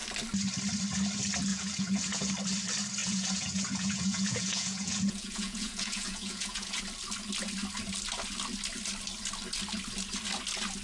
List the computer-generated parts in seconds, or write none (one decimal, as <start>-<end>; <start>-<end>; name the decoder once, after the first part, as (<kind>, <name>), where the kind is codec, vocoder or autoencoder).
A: 1.5-2.3 (vocoder, Vocos); 3.0-6.8